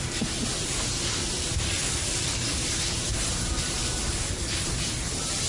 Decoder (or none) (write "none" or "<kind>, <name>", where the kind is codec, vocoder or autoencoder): none